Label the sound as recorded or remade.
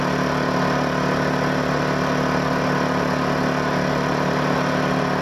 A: recorded